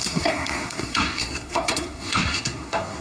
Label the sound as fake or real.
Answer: fake